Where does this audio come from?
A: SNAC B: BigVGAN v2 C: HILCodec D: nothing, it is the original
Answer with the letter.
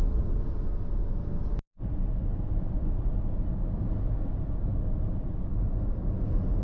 D